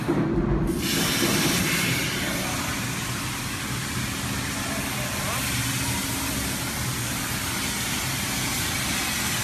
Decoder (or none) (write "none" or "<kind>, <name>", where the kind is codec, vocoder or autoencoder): none